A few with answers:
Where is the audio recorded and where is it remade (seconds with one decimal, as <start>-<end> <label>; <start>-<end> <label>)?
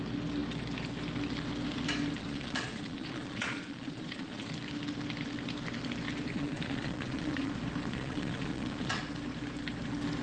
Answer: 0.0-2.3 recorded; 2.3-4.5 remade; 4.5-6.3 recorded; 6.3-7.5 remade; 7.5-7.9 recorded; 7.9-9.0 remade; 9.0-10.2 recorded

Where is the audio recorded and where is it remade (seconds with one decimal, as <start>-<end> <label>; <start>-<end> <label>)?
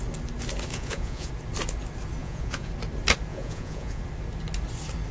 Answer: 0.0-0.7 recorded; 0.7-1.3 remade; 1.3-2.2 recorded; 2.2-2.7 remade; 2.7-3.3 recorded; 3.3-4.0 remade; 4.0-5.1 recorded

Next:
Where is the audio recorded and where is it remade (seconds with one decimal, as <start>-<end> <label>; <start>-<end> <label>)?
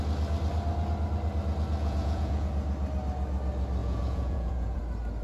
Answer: 0.0-1.8 recorded; 1.8-2.5 remade; 2.5-3.8 recorded; 3.8-4.8 remade; 4.8-5.2 recorded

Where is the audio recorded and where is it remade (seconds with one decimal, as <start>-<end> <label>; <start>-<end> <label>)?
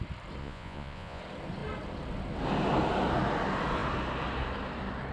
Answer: 0.0-0.4 recorded; 0.4-1.2 remade; 1.2-5.1 recorded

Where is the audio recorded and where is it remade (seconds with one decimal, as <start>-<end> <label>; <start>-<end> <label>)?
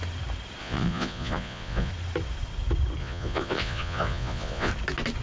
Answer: 0.0-0.6 recorded; 0.6-1.9 remade; 1.9-3.0 recorded; 3.0-4.7 remade; 4.7-5.2 recorded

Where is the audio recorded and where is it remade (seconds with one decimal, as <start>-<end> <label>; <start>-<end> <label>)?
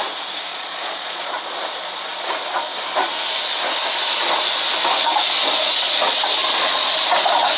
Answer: 0.0-0.5 recorded; 0.5-1.4 remade; 1.4-7.6 recorded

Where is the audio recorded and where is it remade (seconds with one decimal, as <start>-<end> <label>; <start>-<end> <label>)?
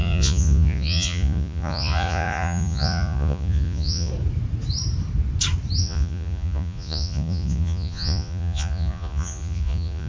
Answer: 0.0-4.1 remade; 4.1-5.8 recorded; 5.8-10.1 remade